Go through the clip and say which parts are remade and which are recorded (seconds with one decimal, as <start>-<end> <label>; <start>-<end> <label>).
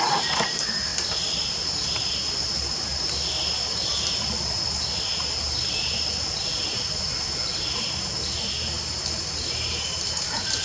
0.0-10.6 recorded